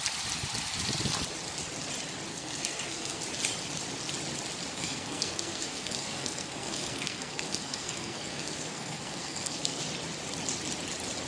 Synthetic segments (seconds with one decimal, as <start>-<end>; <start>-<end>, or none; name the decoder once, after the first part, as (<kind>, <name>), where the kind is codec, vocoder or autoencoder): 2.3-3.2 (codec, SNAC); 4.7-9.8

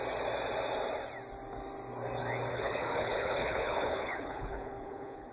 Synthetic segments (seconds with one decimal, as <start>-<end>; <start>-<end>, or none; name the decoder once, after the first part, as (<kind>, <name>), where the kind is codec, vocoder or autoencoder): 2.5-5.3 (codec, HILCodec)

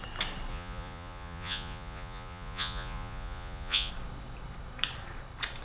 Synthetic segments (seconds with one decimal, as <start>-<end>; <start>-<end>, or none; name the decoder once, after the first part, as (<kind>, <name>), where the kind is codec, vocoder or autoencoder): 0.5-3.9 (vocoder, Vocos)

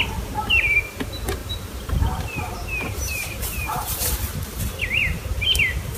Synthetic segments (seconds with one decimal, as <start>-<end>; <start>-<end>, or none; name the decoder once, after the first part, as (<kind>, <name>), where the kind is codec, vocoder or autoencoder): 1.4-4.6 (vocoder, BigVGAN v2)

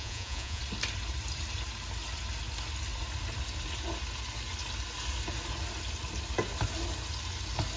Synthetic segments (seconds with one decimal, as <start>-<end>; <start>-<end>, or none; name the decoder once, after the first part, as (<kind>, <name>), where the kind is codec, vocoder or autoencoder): 0.0-0.6 (vocoder, Vocos)